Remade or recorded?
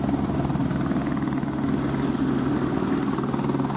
recorded